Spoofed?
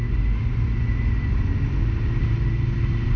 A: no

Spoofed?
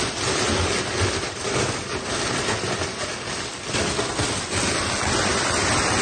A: no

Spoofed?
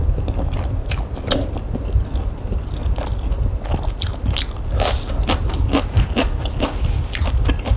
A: no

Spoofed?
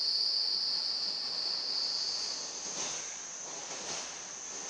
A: no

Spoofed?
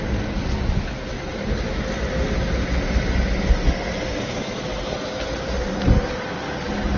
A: no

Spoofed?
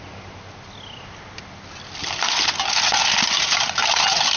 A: no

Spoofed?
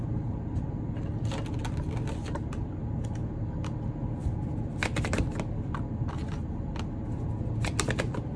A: no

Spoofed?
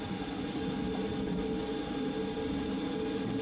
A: no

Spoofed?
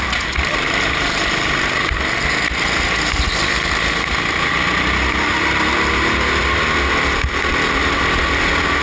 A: no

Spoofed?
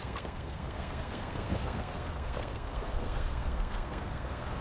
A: yes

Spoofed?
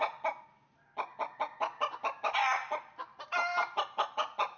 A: no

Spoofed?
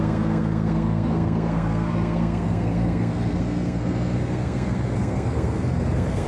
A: yes